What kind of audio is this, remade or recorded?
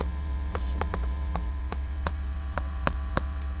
remade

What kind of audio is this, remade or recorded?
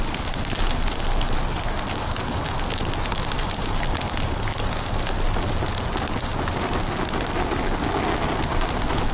recorded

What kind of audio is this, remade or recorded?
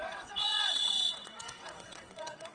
remade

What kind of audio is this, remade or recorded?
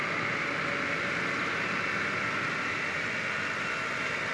recorded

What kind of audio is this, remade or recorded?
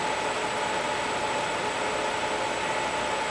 recorded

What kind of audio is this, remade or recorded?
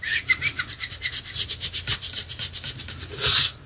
recorded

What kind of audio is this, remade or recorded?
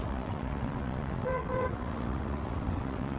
remade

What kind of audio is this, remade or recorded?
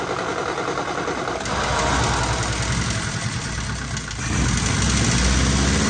recorded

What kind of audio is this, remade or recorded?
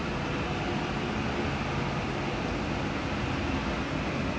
recorded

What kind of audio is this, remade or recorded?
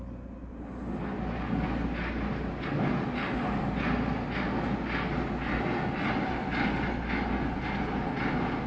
recorded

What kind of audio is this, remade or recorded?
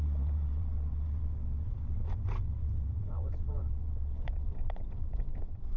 remade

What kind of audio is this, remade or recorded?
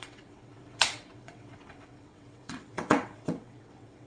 remade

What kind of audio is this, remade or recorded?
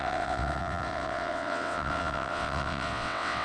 remade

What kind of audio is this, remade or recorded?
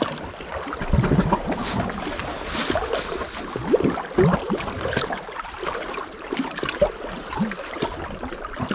recorded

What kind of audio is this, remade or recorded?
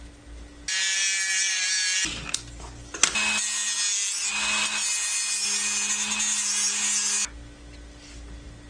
recorded